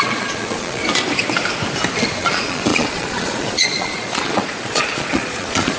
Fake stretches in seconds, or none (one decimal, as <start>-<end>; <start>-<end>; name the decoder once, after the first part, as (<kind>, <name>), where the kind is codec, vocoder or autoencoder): 0.0-0.8 (vocoder, Vocos); 2.2-5.8